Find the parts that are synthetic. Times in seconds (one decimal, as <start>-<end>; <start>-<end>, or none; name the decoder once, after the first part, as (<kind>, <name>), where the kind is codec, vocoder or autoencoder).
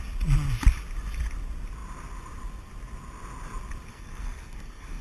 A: 3.9-5.0 (codec, SNAC)